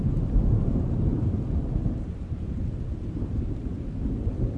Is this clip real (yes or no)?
yes